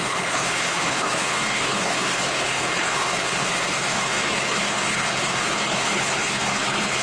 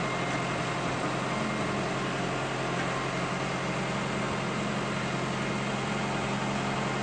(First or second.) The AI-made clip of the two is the first